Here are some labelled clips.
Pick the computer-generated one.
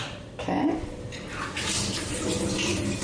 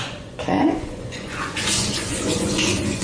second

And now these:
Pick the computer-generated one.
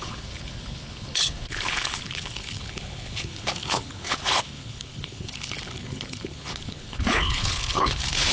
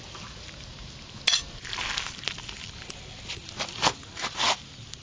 first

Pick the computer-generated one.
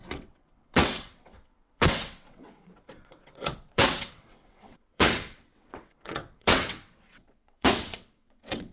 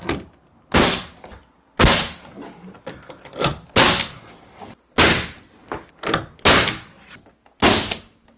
first